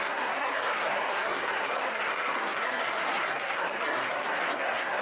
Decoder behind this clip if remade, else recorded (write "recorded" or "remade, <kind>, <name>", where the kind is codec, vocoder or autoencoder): remade, codec, SNAC